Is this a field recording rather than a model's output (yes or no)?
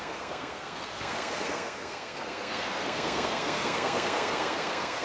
no